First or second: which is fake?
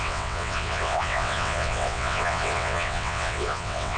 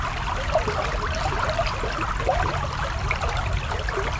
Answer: first